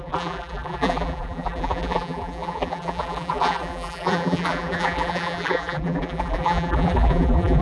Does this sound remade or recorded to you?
remade